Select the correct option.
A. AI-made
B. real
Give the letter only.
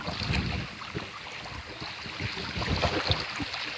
B